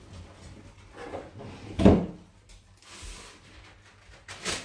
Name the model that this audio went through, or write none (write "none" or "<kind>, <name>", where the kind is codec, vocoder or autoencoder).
none